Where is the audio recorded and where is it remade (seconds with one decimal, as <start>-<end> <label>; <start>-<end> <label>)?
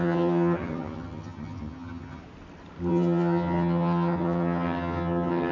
0.0-2.2 remade; 2.2-2.9 recorded; 2.9-5.5 remade